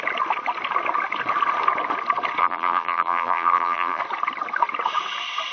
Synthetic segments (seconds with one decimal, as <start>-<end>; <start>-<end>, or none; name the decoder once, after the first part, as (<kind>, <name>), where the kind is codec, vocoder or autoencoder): 2.4-4.0 (vocoder, BigVGAN v2)